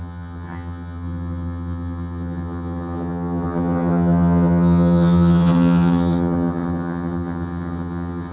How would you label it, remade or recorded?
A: remade